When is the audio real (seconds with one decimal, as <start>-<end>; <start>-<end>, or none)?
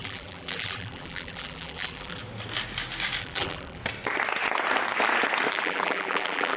2.2-3.2; 3.8-5.5